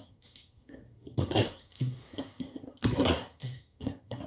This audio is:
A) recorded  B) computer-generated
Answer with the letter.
B